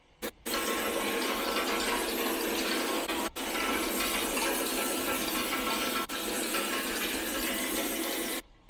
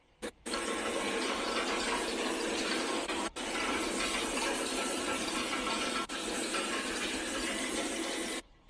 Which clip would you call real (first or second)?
first